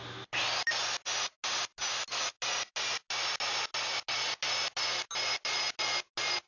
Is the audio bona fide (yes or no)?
yes